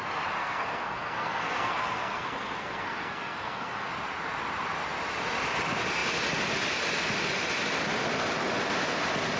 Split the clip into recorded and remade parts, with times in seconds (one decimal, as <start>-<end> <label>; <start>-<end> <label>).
0.0-0.4 recorded; 0.4-3.9 remade; 3.9-9.4 recorded